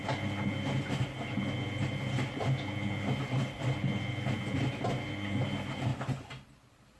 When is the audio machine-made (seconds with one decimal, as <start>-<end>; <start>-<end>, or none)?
none